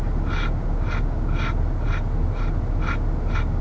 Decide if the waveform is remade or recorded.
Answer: recorded